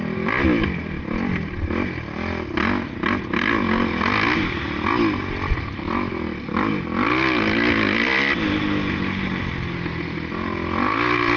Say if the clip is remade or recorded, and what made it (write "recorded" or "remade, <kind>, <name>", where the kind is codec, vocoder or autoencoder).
recorded